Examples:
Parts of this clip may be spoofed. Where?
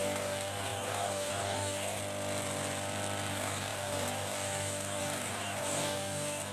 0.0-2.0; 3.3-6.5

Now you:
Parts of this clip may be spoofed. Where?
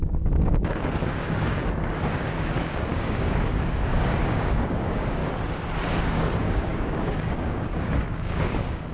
0.0-5.2; 6.0-8.9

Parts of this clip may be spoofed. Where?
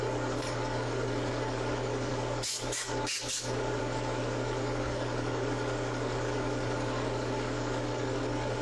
0.0-8.6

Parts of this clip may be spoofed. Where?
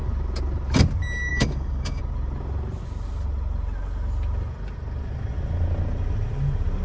1.3-2.0